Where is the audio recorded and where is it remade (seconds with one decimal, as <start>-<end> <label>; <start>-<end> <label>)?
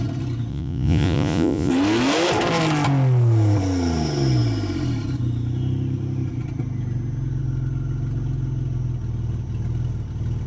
0.0-0.5 recorded; 0.5-1.7 remade; 1.7-10.5 recorded